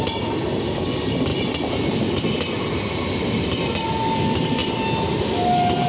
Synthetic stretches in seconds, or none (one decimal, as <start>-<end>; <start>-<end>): none